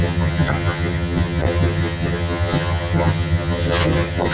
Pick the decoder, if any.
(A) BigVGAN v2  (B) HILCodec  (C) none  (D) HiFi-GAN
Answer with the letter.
D